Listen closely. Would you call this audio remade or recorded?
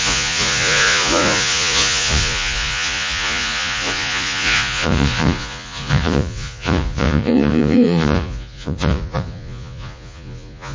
remade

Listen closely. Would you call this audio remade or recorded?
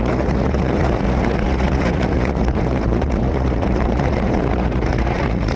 remade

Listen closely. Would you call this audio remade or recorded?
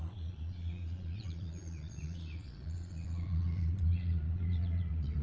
remade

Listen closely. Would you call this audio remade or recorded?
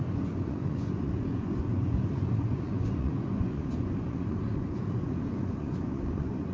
remade